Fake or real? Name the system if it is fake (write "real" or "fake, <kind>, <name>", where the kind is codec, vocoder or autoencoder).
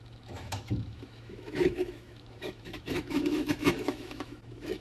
fake, autoencoder, DAC-VAE